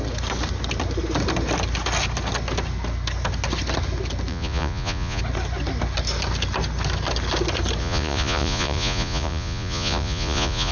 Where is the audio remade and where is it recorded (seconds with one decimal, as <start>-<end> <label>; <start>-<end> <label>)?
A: 0.0-4.3 recorded; 4.3-5.2 remade; 5.2-7.8 recorded; 7.8-10.7 remade